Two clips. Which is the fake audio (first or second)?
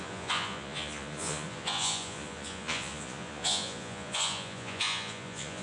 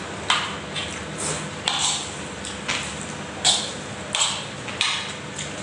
first